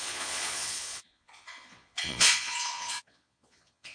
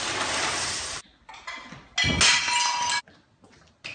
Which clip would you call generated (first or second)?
first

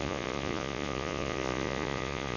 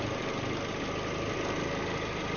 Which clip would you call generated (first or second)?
first